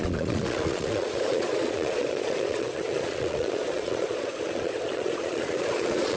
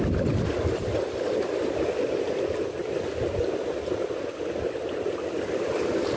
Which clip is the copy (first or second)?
first